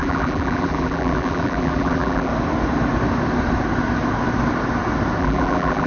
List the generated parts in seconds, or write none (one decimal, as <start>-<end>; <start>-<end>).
0.0-2.3; 5.2-5.9